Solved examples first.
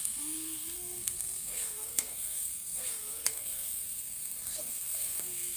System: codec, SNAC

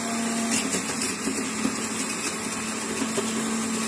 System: none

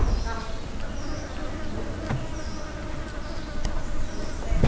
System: none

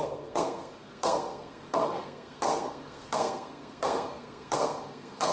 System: codec, SNAC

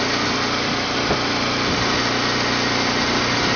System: none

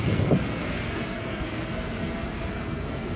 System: codec, SNAC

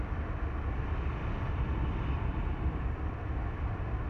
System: none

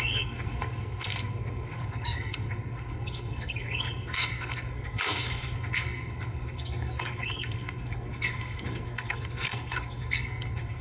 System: codec, SNAC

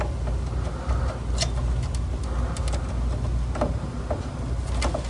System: none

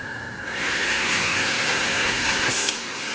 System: codec, SNAC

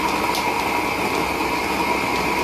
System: none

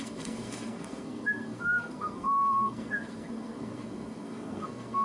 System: codec, SNAC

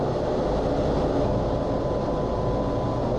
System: none